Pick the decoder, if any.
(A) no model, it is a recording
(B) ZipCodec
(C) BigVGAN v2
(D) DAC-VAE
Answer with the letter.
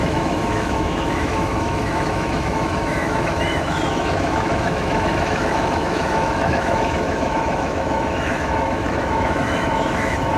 D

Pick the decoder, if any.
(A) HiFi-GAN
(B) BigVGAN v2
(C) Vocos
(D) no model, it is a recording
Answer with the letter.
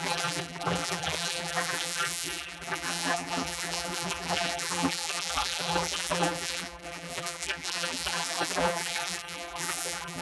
B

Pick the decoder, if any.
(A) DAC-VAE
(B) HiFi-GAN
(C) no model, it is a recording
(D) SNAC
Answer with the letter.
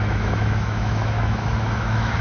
A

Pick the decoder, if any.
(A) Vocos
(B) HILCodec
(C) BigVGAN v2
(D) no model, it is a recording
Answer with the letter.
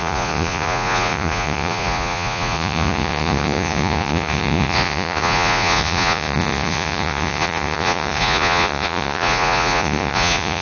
A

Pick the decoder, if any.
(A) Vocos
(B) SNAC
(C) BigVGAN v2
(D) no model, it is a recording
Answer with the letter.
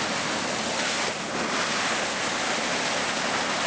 D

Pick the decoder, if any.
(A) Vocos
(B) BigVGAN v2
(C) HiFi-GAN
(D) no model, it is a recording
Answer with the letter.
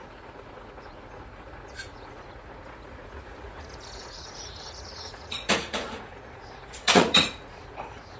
A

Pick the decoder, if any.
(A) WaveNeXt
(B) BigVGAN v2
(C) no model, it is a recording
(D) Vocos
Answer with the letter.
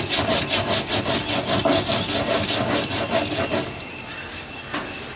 C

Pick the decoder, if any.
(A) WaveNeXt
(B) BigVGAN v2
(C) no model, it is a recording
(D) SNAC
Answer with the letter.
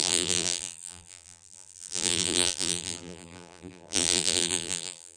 B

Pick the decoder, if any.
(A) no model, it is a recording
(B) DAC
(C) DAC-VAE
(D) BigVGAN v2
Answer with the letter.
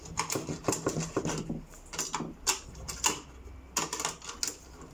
A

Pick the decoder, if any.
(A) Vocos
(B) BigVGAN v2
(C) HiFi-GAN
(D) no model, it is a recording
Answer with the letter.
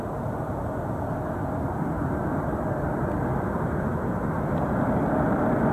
D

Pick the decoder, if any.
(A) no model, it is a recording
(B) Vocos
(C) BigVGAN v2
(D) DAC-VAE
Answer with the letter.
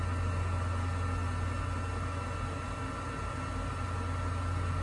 A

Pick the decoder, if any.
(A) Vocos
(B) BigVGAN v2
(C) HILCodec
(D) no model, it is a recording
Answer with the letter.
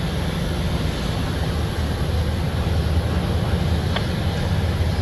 D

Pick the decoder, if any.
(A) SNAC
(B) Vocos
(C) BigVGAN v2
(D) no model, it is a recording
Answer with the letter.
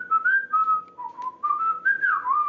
D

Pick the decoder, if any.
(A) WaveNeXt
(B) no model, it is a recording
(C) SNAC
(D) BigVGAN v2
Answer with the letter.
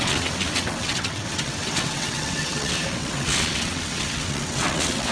A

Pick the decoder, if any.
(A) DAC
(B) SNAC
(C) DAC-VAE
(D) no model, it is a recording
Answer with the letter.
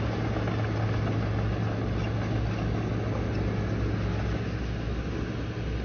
D